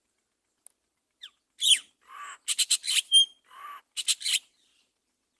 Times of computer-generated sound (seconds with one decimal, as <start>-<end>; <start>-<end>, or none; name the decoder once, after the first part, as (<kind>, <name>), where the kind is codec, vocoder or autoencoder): none